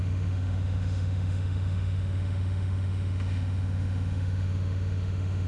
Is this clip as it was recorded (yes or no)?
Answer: no